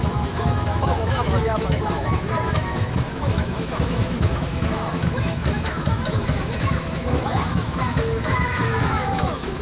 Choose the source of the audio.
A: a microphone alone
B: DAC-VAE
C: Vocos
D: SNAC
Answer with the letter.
B